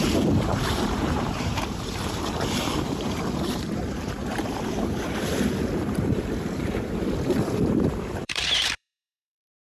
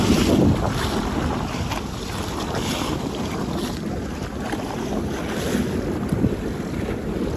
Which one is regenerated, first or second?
first